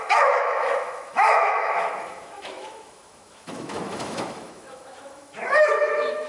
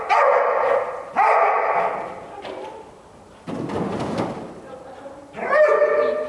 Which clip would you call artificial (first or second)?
first